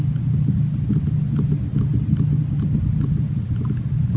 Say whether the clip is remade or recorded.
recorded